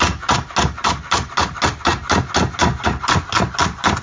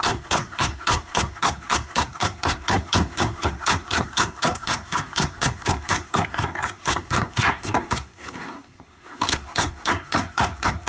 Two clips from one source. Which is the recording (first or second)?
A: first